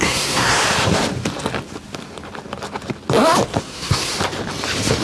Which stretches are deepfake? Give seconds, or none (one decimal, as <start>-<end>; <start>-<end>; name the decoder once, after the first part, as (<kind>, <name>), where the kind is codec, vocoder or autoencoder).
0.0-0.6 (codec, SNAC); 3.6-4.1